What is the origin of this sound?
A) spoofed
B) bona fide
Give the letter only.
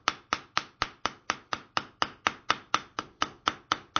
B